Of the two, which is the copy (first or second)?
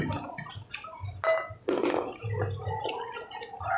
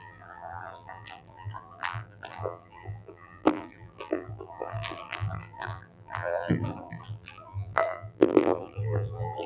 second